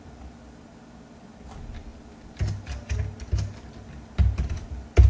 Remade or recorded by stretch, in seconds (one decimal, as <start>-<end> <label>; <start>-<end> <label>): 0.0-5.1 recorded